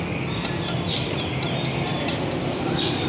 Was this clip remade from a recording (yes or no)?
yes